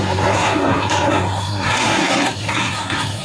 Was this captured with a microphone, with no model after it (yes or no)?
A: no